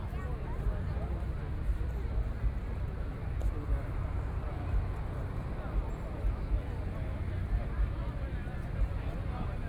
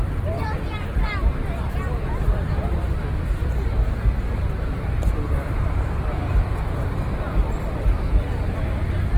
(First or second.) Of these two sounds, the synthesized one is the second